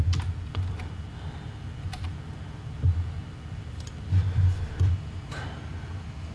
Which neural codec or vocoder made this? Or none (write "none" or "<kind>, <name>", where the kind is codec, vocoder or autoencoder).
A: none